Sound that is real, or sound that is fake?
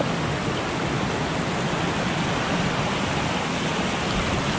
real